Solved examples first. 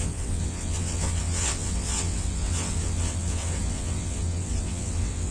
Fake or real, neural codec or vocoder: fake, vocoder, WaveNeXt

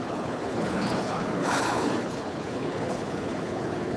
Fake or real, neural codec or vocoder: fake, codec, HILCodec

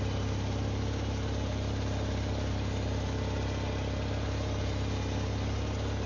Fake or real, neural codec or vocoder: real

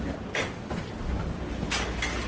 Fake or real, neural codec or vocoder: real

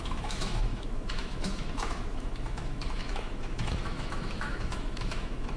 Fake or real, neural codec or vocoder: fake, autoencoder, DAC-VAE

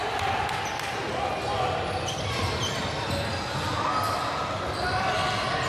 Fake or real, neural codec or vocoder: real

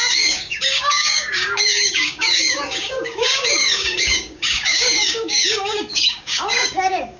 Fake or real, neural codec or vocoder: fake, codec, DAC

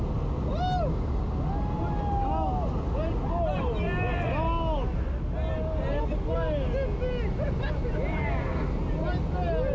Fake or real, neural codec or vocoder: real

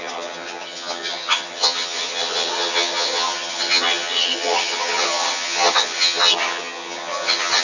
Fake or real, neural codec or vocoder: fake, vocoder, HiFi-GAN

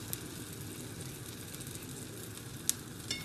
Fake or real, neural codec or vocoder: real